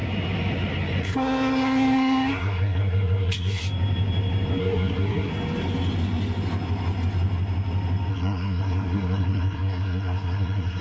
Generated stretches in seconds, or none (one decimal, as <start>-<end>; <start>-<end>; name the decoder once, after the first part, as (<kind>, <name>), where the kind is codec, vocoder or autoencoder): 1.0-3.6 (codec, SNAC); 4.6-5.3; 8.1-10.8